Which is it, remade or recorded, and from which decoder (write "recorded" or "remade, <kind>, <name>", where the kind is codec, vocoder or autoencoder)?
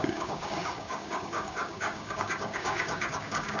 remade, codec, DAC